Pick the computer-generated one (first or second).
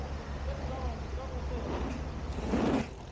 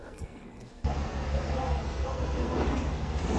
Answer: second